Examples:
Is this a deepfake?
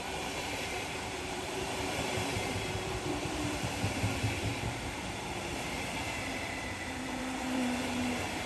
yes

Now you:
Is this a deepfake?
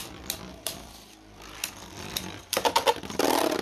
yes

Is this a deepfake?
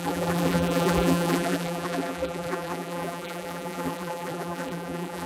yes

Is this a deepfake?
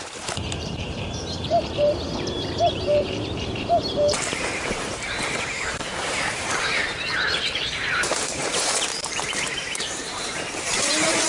yes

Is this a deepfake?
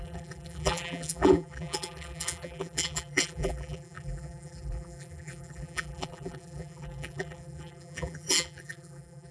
yes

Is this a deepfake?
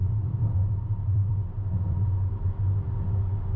no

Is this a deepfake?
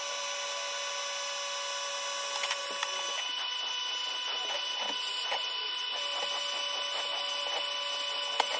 no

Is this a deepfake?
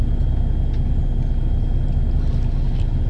no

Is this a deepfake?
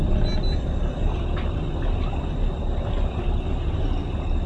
no